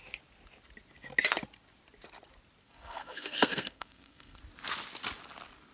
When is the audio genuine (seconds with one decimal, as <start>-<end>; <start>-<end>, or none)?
0.0-2.6; 4.4-5.7